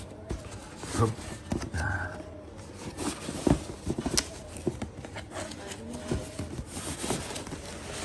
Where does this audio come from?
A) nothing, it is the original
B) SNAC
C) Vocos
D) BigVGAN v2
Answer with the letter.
A